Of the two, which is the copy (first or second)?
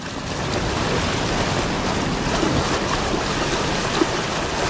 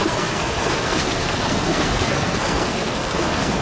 second